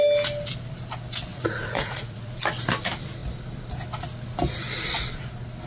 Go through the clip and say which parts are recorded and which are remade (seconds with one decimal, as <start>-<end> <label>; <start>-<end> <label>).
0.0-1.3 recorded; 1.3-2.3 remade; 2.3-5.7 recorded